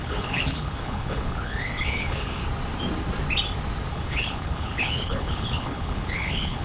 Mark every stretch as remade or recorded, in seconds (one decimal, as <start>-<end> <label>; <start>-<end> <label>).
0.0-2.4 remade; 2.4-3.9 recorded; 3.9-6.6 remade